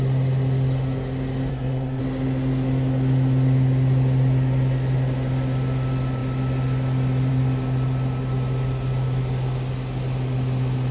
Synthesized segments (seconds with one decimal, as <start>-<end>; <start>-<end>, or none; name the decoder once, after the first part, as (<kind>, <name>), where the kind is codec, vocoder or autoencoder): 1.5-2.0 (codec, SNAC)